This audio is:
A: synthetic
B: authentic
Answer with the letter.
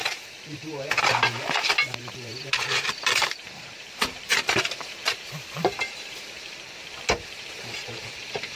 A